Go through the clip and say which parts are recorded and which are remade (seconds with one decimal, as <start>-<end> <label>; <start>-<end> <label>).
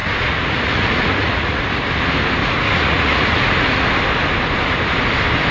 0.0-1.8 remade; 1.8-2.4 recorded; 2.4-3.9 remade; 3.9-5.5 recorded